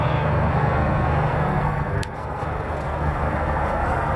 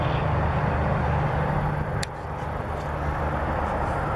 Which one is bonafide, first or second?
second